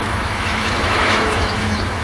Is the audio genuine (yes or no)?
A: no